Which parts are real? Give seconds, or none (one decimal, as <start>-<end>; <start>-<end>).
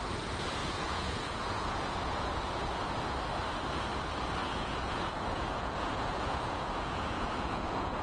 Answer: 0.0-0.6; 2.9-4.4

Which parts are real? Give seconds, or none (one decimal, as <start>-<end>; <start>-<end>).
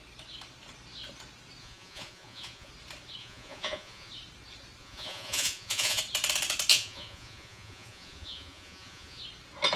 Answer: 0.0-1.6; 2.7-3.2; 4.1-4.8; 6.0-6.7; 9.2-9.8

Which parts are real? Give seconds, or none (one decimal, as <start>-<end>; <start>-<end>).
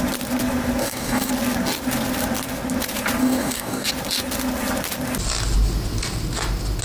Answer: 0.0-0.8; 1.3-3.2; 3.9-6.8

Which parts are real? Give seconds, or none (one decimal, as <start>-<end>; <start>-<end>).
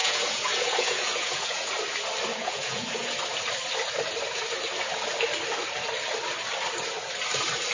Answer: 1.7-2.3; 3.1-7.7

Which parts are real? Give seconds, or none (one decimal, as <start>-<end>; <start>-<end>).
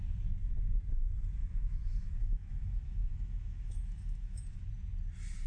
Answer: 0.0-1.4; 4.7-5.5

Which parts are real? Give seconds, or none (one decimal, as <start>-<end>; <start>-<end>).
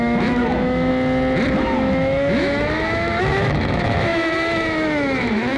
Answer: 0.9-1.6